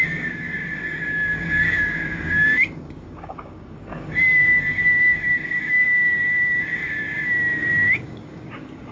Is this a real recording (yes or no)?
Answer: no